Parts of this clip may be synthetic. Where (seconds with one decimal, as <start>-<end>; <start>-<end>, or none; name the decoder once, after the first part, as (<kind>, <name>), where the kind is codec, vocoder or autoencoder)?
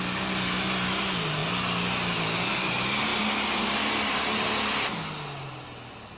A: none